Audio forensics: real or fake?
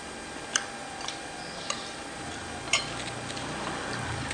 real